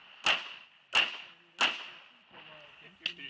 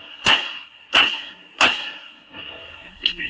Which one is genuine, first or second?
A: first